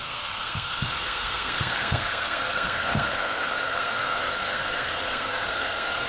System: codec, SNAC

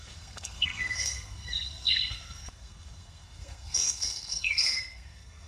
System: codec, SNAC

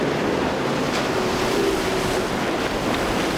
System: none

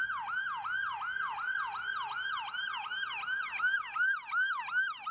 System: none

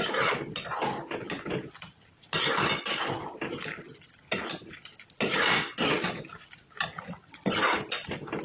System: none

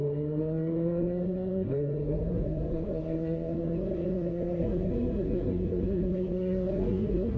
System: codec, SNAC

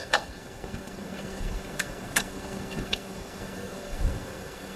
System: codec, SNAC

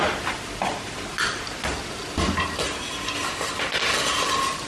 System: none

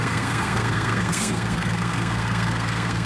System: codec, SNAC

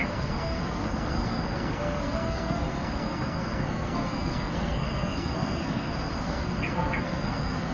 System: codec, SNAC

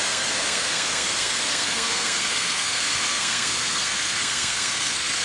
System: codec, SNAC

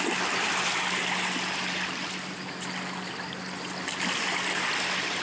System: none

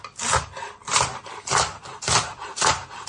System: none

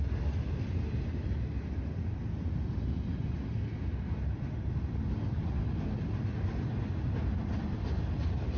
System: none